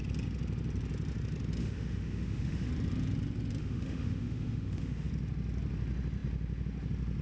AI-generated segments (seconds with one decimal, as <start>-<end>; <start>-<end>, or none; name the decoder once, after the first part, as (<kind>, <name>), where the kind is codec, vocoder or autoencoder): 1.6-2.7 (autoencoder, DAC-VAE); 3.6-5.1